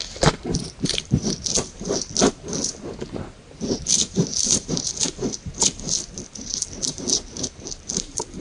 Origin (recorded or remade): remade